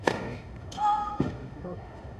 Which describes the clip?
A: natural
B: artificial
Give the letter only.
B